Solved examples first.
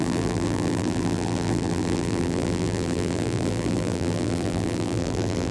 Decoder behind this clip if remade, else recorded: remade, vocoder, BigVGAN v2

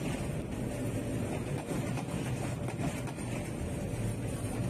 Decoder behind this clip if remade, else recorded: recorded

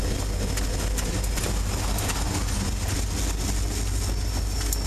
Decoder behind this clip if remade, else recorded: recorded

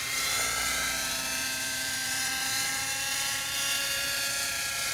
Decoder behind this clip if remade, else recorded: remade, vocoder, BigVGAN v2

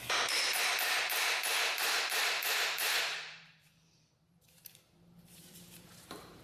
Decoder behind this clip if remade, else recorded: remade, vocoder, BigVGAN v2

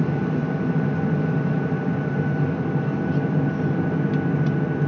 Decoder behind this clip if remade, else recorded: recorded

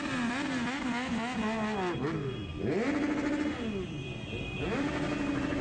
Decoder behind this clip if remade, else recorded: recorded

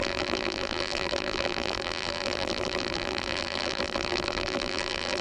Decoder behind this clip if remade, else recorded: remade, vocoder, BigVGAN v2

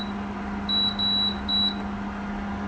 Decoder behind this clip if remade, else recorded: recorded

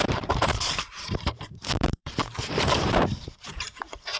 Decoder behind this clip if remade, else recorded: remade, vocoder, BigVGAN v2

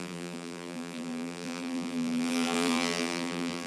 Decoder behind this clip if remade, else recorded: remade, vocoder, BigVGAN v2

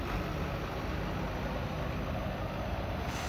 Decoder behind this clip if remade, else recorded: recorded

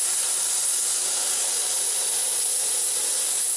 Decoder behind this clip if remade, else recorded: recorded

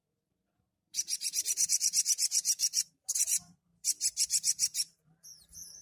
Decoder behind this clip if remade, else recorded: remade, vocoder, BigVGAN v2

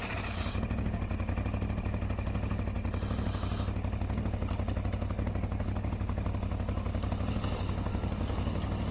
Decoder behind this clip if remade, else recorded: recorded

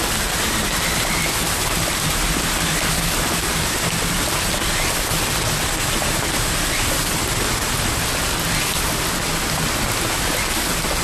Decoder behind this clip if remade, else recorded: recorded